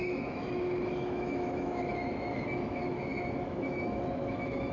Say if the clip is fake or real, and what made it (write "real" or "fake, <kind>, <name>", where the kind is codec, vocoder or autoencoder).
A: fake, autoencoder, DAC-VAE